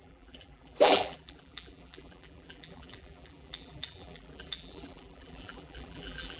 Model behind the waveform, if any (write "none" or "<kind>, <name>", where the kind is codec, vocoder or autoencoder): vocoder, BigVGAN v2